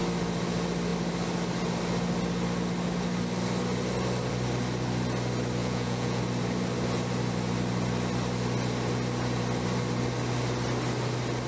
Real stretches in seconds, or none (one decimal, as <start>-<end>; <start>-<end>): 0.0-5.6; 6.2-11.5